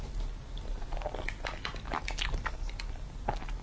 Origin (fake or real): real